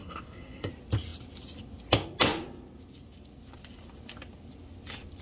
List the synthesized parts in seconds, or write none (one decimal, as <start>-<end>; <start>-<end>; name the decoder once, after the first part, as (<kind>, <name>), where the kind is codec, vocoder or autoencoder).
0.0-0.7 (codec, SNAC)